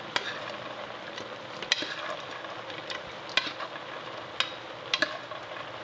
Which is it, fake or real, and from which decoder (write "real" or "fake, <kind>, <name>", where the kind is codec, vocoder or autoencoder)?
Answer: real